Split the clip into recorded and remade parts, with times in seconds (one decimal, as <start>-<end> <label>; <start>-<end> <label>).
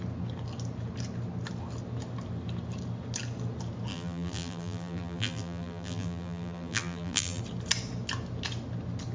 0.0-3.9 recorded; 3.9-7.4 remade; 7.4-9.1 recorded